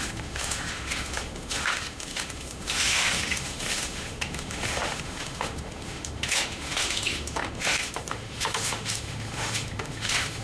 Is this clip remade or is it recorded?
remade